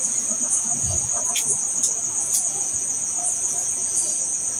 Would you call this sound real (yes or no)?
no